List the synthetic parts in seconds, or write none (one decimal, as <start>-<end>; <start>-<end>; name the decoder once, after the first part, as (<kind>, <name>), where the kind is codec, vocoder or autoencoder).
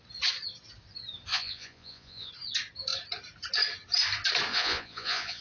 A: 1.3-2.3 (vocoder, Vocos); 4.5-5.4